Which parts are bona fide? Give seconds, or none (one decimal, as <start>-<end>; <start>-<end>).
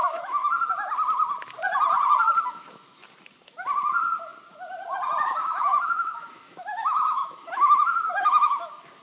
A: 0.4-2.5; 3.0-5.2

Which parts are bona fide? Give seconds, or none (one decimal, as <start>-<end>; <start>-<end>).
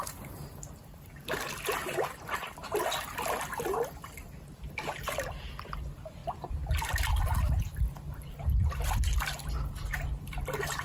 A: 0.0-10.8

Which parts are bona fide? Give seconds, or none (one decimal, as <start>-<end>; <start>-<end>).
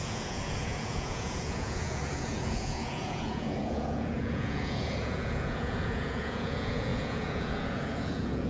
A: none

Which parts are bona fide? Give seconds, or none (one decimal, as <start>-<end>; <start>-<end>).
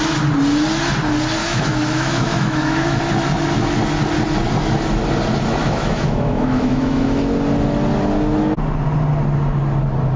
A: 0.0-1.4; 3.0-5.6; 7.2-10.2